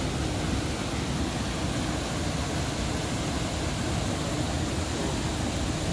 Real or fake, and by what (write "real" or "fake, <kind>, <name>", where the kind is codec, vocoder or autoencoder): real